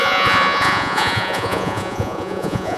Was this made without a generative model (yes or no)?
no